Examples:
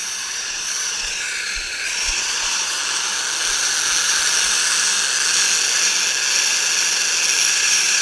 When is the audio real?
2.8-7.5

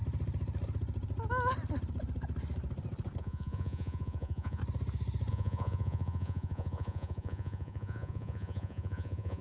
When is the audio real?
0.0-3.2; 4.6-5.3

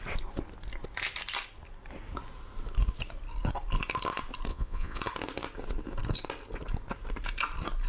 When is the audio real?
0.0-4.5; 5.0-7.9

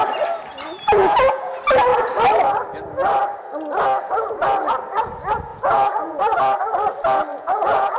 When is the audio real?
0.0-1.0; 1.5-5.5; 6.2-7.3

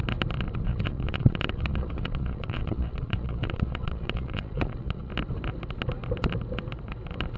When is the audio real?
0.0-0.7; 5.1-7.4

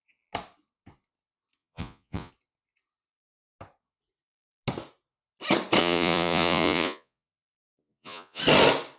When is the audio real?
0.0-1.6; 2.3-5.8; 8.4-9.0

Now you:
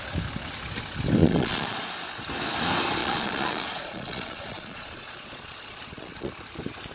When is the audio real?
0.0-1.2; 1.9-3.0; 6.3-6.9

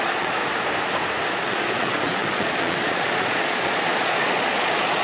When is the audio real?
0.4-1.3